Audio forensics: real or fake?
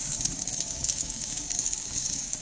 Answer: fake